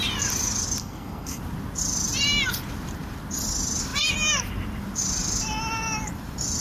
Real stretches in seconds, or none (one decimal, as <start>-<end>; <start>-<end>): 0.0-0.8; 1.4-6.6

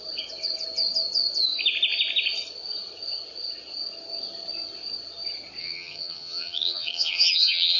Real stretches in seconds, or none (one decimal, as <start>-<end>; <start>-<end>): 0.0-5.6

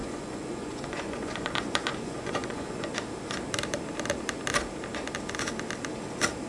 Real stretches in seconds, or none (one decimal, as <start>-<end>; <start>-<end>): 2.9-6.5

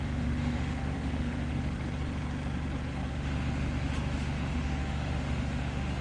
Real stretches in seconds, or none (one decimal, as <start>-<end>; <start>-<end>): 1.5-3.1

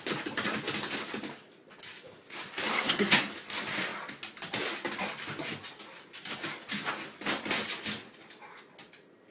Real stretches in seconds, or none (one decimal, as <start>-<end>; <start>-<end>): 0.0-2.7; 3.3-9.3

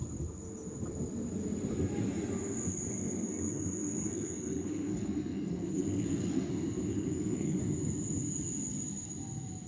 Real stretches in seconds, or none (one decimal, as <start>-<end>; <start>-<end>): 0.0-3.0; 6.5-6.9; 7.6-9.7

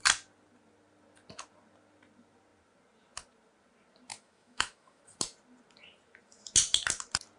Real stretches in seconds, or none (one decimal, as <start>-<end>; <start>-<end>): 0.0-4.1; 5.0-7.4